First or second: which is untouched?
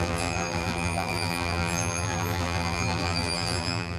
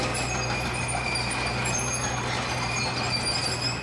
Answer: second